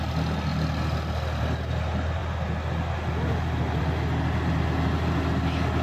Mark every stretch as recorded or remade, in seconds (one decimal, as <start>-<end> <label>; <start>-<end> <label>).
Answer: 0.0-5.8 recorded